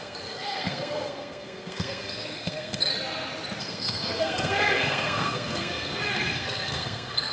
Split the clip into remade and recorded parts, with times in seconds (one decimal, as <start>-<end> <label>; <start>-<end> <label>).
0.0-2.9 remade; 2.9-3.6 recorded; 3.6-7.3 remade